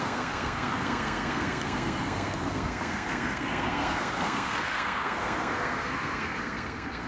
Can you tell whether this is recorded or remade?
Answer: remade